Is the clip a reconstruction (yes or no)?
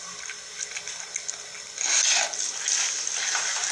no